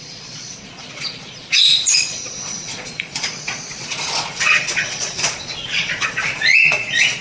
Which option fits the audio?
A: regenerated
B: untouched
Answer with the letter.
A